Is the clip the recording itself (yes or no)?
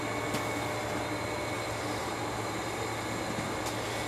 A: yes